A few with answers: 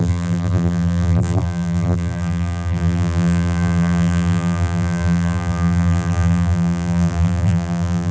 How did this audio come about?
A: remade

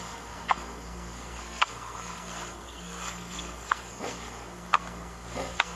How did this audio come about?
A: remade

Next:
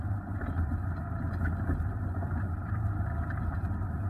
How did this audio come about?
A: remade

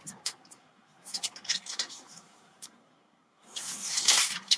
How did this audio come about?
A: remade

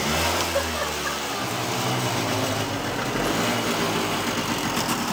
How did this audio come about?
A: recorded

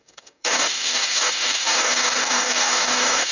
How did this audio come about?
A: remade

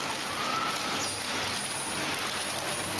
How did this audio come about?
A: recorded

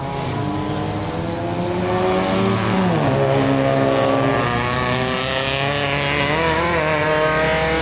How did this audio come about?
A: recorded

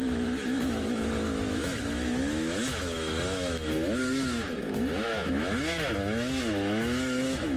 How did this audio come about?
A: remade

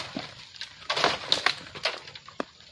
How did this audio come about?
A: recorded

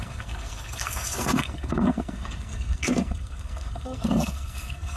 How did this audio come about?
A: remade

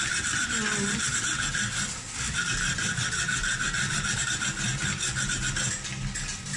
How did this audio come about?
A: recorded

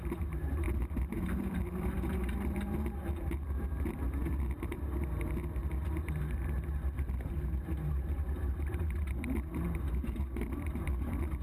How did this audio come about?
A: remade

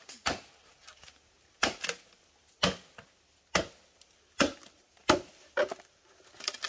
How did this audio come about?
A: recorded